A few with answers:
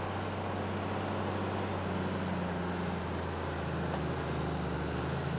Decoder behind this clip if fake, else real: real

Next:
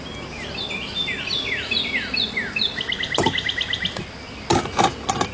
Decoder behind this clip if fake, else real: real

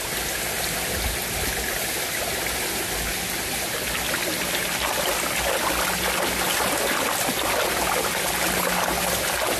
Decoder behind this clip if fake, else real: real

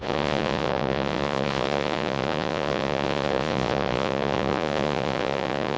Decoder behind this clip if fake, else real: fake, vocoder, Vocos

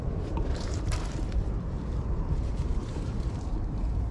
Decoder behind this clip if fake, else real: fake, vocoder, BigVGAN v2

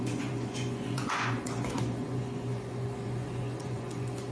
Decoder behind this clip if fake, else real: fake, vocoder, Vocos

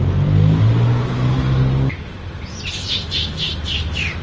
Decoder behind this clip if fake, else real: real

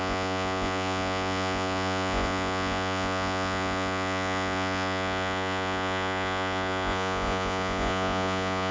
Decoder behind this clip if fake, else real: fake, vocoder, Vocos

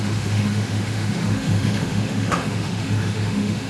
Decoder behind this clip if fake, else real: fake, autoencoder, DAC-VAE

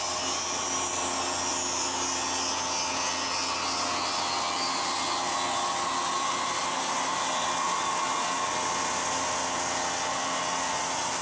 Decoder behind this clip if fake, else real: real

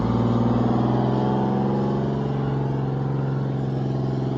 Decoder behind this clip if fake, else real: real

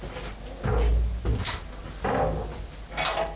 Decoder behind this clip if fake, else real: real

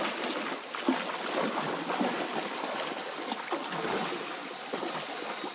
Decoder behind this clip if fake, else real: real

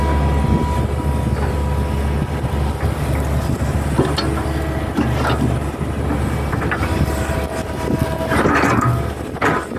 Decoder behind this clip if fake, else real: real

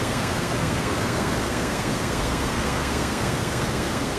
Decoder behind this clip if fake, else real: fake, codec, SNAC